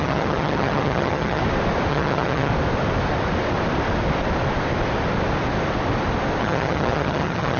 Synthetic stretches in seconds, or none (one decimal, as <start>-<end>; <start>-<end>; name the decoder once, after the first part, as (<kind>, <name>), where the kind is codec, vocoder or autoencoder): 0.0-1.4 (vocoder, HiFi-GAN); 1.9-2.5; 6.4-7.6